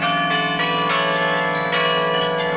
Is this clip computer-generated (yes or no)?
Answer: no